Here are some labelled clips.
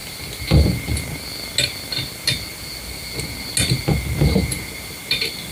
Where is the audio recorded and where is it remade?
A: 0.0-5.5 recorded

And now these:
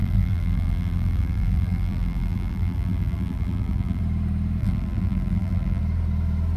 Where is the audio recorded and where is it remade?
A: 0.0-4.0 remade; 4.0-4.6 recorded; 4.6-5.8 remade; 5.8-6.6 recorded

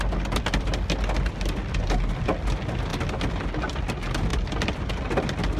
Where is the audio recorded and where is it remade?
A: 0.0-4.3 recorded; 4.3-4.9 remade; 4.9-5.6 recorded

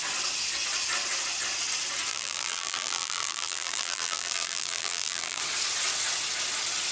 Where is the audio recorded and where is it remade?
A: 0.0-2.1 recorded; 2.1-5.4 remade; 5.4-6.9 recorded

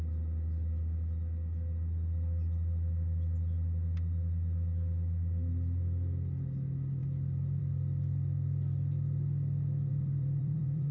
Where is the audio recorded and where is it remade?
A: 0.0-9.9 recorded; 9.9-10.9 remade

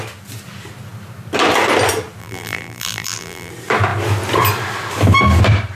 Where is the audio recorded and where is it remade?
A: 0.0-2.2 recorded; 2.2-3.5 remade; 3.5-5.8 recorded

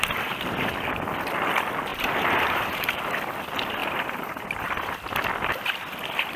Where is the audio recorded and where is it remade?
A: 0.0-1.9 recorded; 1.9-3.1 remade; 3.1-3.8 recorded; 3.8-4.5 remade; 4.5-6.4 recorded